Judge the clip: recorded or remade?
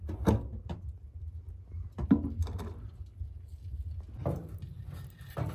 recorded